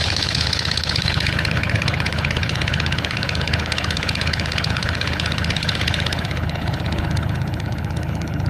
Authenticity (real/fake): fake